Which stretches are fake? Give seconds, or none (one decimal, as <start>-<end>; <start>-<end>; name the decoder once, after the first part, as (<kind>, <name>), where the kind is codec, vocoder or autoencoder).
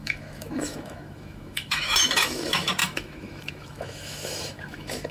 0.0-5.1 (autoencoder, DAC-VAE)